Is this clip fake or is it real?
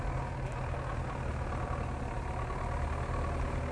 real